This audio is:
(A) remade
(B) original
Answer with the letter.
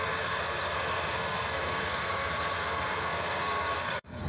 A